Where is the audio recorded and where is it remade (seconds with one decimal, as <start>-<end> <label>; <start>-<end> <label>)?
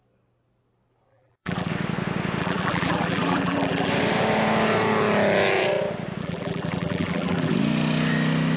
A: 0.0-1.1 recorded; 1.1-1.7 remade; 1.7-2.4 recorded; 2.4-3.9 remade; 3.9-6.2 recorded; 6.2-7.5 remade; 7.5-8.6 recorded